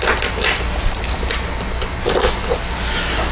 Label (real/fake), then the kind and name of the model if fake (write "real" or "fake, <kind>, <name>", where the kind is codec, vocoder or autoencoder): real